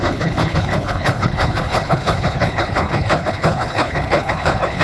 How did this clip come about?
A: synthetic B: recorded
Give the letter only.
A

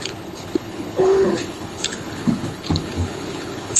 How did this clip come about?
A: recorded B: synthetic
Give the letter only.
B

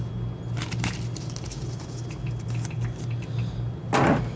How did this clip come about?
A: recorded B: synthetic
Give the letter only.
A